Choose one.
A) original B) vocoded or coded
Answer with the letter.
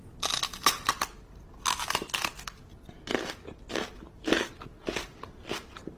A